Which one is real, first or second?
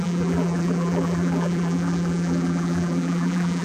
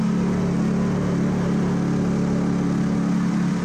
second